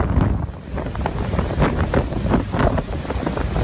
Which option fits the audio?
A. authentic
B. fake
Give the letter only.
A